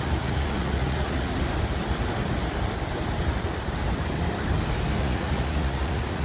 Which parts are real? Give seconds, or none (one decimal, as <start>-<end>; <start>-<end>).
1.3-5.0

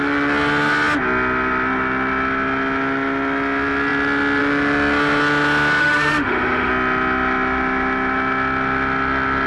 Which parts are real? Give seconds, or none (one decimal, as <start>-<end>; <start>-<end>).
0.0-5.8; 6.7-9.5

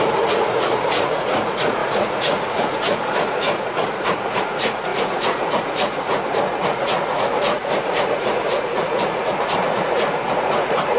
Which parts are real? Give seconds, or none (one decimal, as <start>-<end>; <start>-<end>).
none

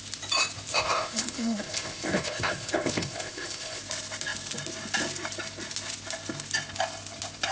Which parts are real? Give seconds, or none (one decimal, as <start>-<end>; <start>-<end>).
0.0-0.7; 3.8-7.5

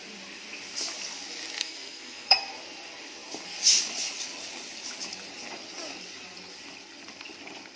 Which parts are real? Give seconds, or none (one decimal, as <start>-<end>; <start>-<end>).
0.0-1.6; 2.4-7.8

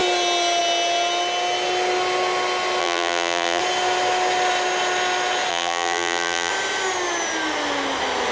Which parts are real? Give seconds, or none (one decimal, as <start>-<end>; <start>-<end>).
0.0-2.8; 3.6-5.5; 6.5-8.3

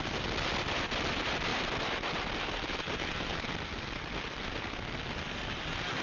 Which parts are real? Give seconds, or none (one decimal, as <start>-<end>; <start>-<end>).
0.0-6.0

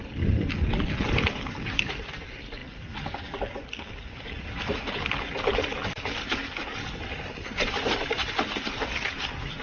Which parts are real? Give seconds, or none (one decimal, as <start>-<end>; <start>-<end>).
0.0-9.6